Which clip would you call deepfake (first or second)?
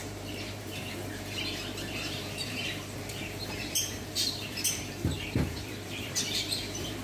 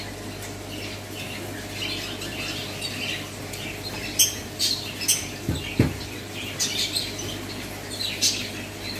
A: first